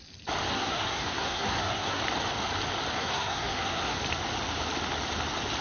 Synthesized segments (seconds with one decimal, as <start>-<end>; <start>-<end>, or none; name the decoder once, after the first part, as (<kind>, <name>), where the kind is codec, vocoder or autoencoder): 0.5-2.0 (codec, SNAC); 3.0-4.0